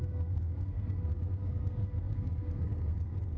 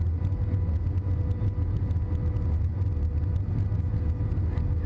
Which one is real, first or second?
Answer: second